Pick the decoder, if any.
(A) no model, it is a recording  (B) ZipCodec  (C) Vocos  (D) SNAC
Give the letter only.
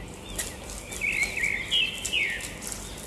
A